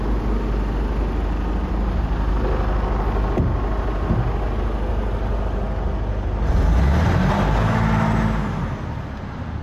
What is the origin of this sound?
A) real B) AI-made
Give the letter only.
A